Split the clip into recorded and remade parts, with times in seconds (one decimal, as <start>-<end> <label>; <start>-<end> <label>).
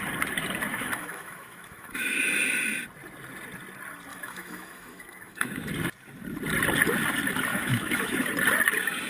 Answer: 0.0-0.7 recorded; 0.7-2.2 remade; 2.2-4.1 recorded; 4.1-5.6 remade; 5.6-7.5 recorded; 7.5-8.3 remade; 8.3-9.1 recorded